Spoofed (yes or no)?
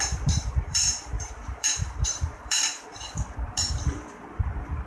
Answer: yes